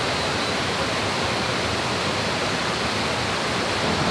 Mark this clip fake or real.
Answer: real